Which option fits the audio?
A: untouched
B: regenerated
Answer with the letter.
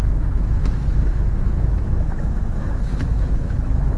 B